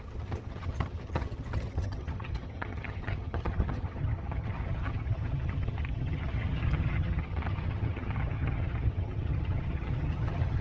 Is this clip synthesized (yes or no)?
yes